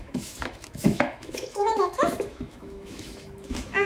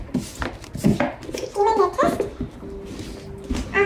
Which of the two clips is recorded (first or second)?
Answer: second